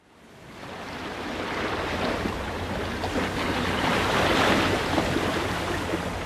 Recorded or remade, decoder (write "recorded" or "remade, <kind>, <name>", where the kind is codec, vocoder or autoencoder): recorded